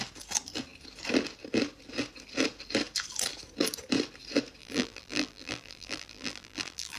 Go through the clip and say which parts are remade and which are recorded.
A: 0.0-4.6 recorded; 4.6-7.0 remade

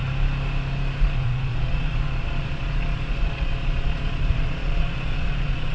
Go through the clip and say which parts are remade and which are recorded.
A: 0.0-1.0 recorded; 1.0-5.7 remade

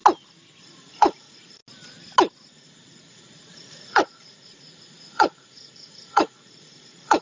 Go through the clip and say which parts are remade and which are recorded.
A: 0.0-0.6 recorded; 0.6-1.6 remade; 1.6-2.5 recorded; 2.5-7.2 remade